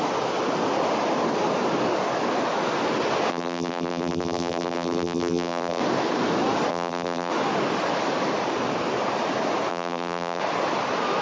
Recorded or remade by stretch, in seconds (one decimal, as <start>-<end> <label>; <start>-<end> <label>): 0.0-3.3 recorded; 3.3-5.8 remade; 5.8-6.7 recorded; 6.7-7.3 remade; 7.3-9.7 recorded; 9.7-10.4 remade; 10.4-11.2 recorded